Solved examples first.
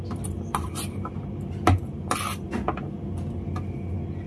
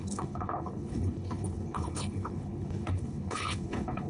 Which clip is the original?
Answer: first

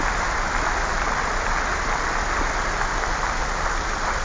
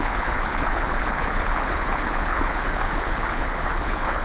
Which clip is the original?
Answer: first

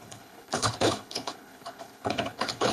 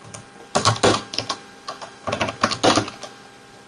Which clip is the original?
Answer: second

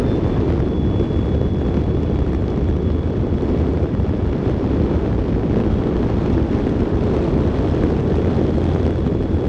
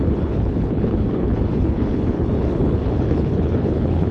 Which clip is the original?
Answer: first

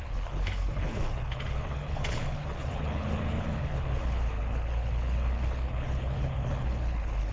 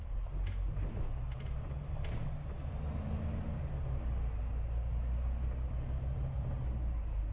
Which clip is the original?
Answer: second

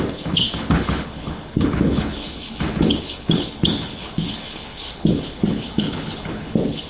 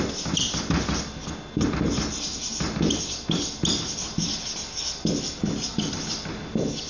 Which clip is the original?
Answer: second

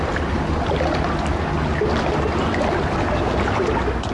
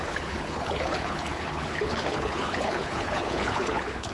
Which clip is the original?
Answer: first